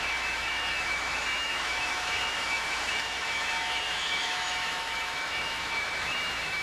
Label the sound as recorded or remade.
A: remade